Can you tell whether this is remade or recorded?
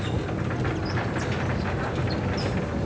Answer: recorded